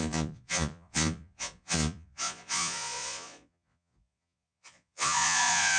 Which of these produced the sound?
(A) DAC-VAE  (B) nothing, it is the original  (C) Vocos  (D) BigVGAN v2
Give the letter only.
C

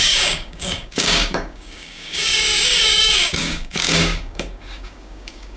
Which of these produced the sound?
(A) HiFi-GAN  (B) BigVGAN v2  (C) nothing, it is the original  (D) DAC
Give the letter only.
D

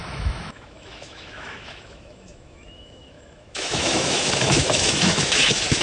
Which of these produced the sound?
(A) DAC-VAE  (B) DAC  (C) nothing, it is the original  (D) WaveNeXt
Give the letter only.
A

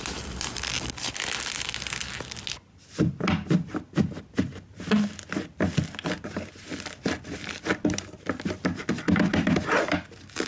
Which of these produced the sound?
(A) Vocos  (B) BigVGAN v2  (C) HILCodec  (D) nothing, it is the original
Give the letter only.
D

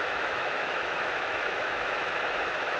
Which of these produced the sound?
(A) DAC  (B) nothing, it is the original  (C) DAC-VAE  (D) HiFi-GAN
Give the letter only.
C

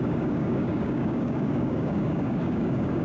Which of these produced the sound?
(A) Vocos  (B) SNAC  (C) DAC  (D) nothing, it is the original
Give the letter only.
C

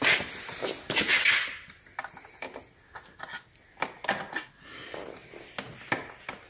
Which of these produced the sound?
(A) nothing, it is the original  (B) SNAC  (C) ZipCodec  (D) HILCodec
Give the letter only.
A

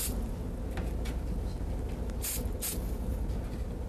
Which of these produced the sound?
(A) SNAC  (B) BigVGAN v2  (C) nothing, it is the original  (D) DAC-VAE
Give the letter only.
C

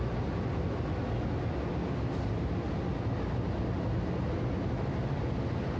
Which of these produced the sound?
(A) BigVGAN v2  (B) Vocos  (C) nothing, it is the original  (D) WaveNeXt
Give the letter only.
C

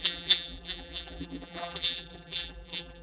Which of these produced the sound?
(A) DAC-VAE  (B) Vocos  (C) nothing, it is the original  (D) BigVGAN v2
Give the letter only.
D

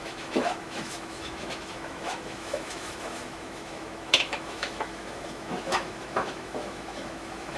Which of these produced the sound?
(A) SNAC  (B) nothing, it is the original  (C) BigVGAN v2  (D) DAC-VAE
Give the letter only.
D